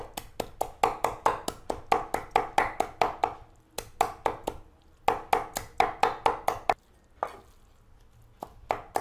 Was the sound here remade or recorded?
recorded